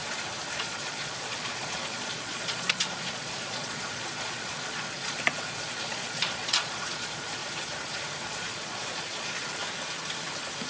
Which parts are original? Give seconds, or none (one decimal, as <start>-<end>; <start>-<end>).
0.0-0.6; 7.4-8.2; 9.6-10.7